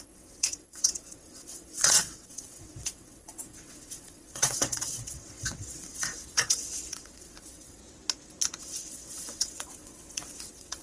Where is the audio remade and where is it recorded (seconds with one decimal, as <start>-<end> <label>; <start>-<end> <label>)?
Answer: 0.0-7.8 remade; 7.8-8.6 recorded; 8.6-10.8 remade